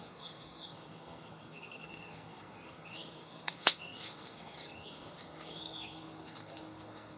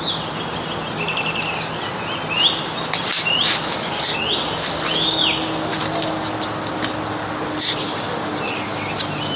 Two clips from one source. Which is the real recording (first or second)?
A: second